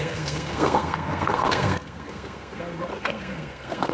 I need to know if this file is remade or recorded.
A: remade